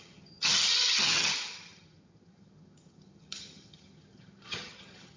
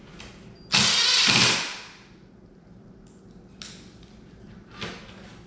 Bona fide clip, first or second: second